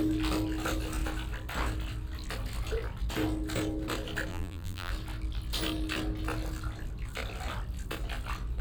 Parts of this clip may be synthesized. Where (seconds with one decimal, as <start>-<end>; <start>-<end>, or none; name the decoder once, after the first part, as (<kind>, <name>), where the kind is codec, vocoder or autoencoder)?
4.3-4.9 (vocoder, BigVGAN v2)